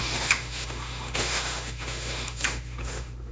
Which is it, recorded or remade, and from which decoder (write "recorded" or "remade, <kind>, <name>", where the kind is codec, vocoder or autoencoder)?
remade, autoencoder, DAC-VAE